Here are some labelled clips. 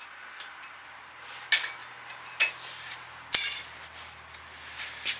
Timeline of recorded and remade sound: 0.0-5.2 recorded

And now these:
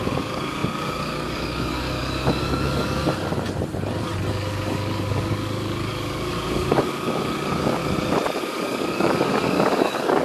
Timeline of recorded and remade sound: 0.0-3.0 remade; 3.0-4.3 recorded; 4.3-7.8 remade; 7.8-8.4 recorded; 8.4-10.2 remade

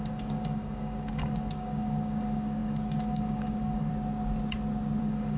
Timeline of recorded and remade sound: 0.0-3.9 remade; 3.9-5.0 recorded; 5.0-5.4 remade

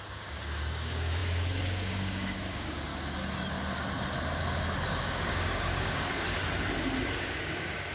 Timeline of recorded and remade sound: 0.0-2.9 remade; 2.9-4.9 recorded; 4.9-6.4 remade; 6.4-7.2 recorded; 7.2-7.9 remade

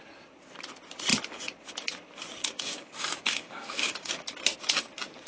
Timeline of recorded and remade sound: 0.0-2.4 recorded; 2.4-4.1 remade; 4.1-5.3 recorded

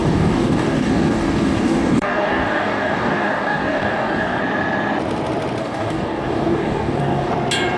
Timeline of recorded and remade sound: 0.0-4.4 remade; 4.4-5.6 recorded; 5.6-7.3 remade; 7.3-7.8 recorded